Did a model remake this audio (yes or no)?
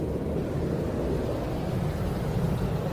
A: yes